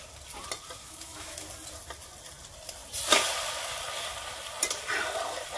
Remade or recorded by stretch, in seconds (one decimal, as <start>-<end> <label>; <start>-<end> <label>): 0.0-0.8 recorded; 0.8-1.5 remade; 1.5-5.6 recorded